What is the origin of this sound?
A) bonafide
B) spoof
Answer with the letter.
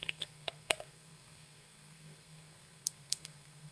B